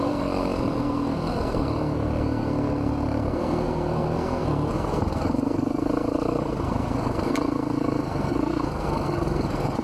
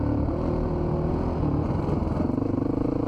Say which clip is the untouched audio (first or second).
second